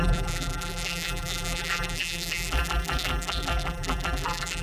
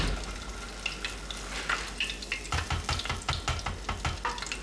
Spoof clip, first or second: first